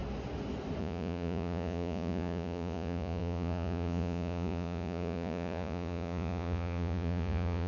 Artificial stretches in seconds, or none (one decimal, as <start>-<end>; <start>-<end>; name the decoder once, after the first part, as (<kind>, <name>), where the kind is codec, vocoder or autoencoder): 0.8-7.7 (vocoder, Vocos)